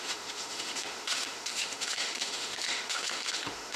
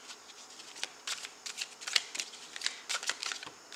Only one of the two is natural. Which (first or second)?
second